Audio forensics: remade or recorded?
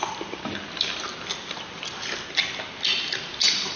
recorded